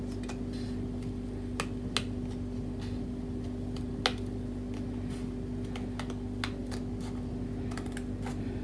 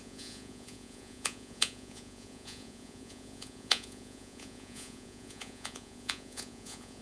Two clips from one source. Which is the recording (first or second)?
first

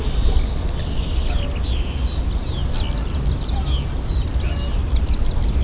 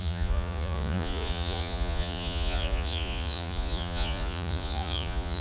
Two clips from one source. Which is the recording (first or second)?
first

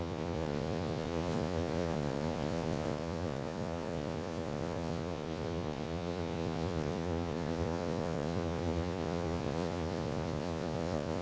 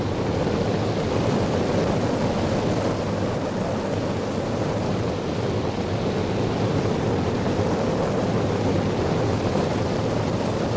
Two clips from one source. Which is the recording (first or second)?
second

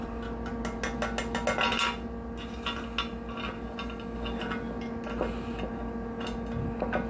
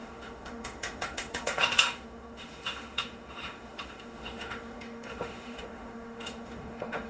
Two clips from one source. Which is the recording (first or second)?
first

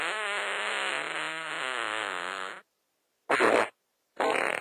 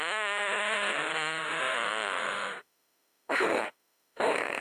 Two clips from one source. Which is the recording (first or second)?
first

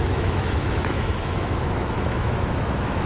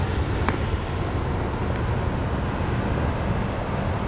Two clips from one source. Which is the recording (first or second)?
second